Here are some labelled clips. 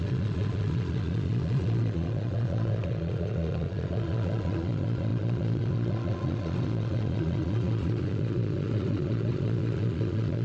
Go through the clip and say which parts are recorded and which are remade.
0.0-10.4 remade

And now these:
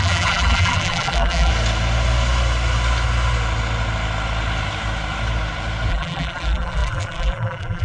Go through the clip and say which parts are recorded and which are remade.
0.0-1.5 remade; 1.5-5.9 recorded; 5.9-7.8 remade

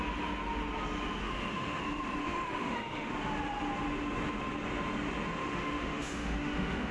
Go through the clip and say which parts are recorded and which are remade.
0.0-1.2 recorded; 1.2-1.8 remade; 1.8-2.2 recorded; 2.2-3.1 remade; 3.1-5.4 recorded; 5.4-6.9 remade

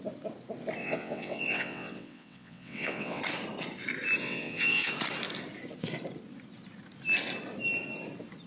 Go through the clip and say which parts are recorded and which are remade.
0.0-0.8 recorded; 0.8-3.2 remade; 3.2-4.2 recorded; 4.2-4.9 remade; 4.9-8.5 recorded

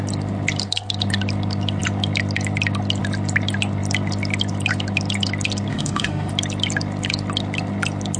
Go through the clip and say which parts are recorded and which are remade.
0.0-5.7 recorded; 5.7-6.3 remade; 6.3-8.2 recorded

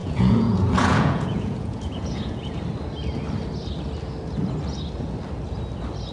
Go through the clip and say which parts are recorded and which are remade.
0.0-2.6 remade; 2.6-6.1 recorded

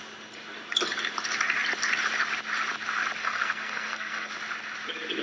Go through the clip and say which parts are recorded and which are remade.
0.0-3.2 recorded; 3.2-4.3 remade; 4.3-5.2 recorded